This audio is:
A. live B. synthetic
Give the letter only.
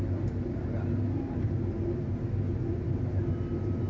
A